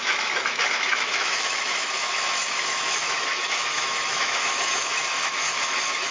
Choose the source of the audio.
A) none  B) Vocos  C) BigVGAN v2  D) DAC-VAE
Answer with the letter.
D